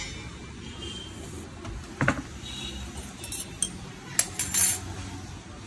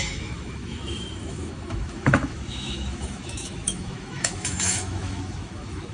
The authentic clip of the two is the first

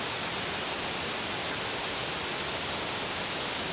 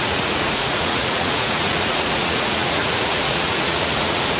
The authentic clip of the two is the first